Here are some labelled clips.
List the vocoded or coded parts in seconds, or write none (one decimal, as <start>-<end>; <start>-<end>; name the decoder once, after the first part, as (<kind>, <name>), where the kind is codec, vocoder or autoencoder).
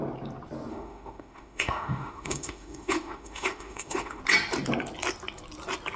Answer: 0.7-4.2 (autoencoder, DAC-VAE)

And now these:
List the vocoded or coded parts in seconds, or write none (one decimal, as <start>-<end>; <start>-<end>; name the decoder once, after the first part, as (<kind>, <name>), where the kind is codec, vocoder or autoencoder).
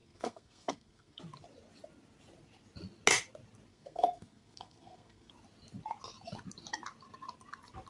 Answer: 0.0-1.2 (codec, SNAC); 3.7-5.3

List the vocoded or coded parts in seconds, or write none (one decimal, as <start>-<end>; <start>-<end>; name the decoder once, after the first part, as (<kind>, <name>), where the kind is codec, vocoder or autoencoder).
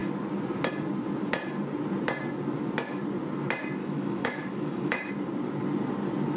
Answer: 3.8-5.1 (autoencoder, DAC-VAE)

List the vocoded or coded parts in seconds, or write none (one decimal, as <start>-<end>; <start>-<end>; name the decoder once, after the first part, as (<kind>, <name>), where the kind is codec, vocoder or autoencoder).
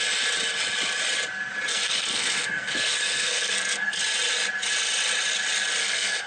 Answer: 1.7-4.0 (codec, SNAC); 5.8-6.3